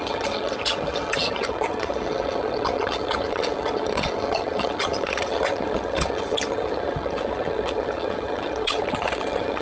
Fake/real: fake